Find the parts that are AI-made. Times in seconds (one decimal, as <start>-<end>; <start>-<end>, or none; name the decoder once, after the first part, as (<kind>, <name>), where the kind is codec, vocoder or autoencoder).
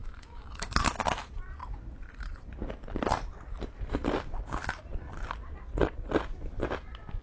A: 0.0-0.7 (autoencoder, DAC-VAE)